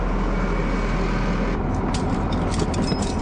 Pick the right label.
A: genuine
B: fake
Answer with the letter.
A